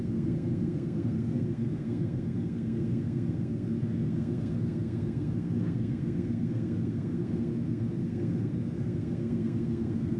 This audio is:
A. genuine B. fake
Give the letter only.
B